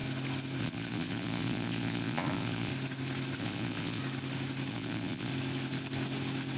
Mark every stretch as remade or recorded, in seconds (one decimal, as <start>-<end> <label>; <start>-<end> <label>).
0.0-0.6 recorded; 0.6-2.7 remade; 2.7-3.4 recorded; 3.4-4.0 remade; 4.0-4.7 recorded; 4.7-5.3 remade; 5.3-6.6 recorded